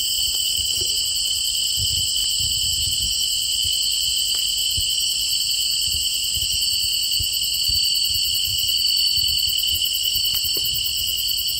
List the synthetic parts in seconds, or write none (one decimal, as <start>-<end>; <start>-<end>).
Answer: 8.5-9.7; 10.9-11.6

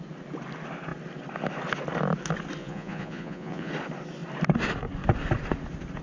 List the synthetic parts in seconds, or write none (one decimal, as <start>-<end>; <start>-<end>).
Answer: 2.6-3.7

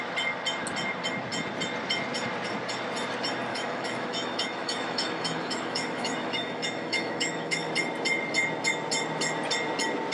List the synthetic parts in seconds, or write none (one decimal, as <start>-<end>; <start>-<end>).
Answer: 3.5-7.7

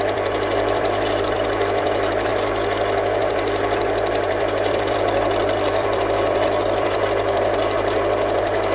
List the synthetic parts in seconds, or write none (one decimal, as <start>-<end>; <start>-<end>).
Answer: 0.0-2.3; 3.2-8.7

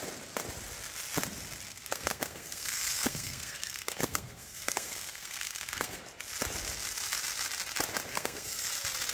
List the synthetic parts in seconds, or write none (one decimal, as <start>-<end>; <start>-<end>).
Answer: 1.7-6.0; 8.1-8.7